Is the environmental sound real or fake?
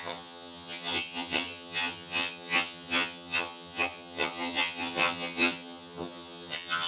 fake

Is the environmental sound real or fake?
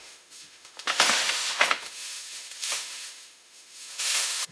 fake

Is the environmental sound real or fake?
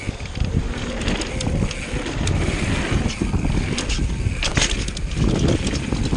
real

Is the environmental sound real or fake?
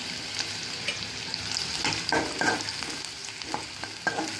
real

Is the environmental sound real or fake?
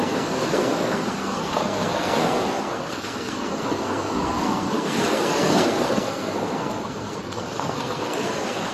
fake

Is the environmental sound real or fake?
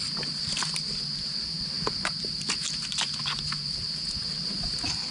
real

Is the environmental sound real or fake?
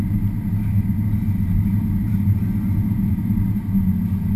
real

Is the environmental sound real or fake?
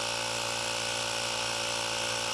real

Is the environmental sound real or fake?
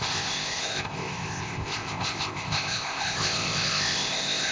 fake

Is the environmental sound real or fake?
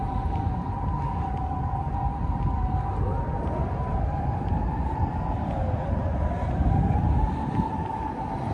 real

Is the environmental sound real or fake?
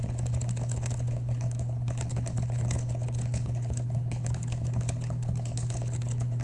fake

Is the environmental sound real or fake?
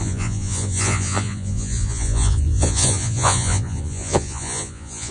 fake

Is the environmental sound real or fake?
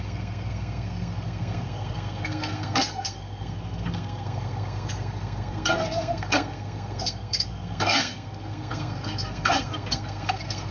fake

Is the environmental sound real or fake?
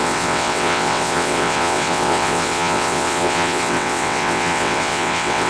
fake